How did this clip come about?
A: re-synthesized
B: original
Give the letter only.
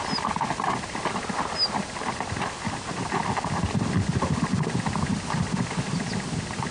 B